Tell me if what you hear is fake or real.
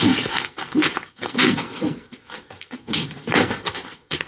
fake